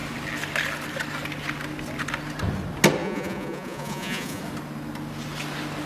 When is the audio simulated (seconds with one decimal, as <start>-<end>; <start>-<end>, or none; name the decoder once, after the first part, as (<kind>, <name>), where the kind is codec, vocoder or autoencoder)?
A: 3.0-4.4 (vocoder, Vocos)